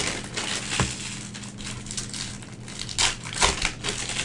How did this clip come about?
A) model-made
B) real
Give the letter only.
B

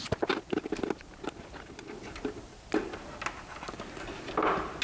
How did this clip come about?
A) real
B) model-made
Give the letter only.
A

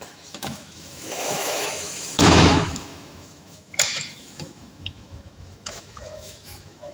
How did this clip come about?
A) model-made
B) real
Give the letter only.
A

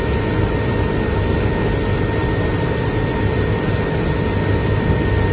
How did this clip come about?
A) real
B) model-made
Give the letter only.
A